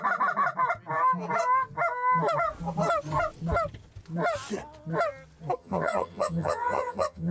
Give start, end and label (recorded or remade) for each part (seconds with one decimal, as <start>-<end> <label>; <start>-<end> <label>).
0.0-5.6 recorded; 5.6-7.3 remade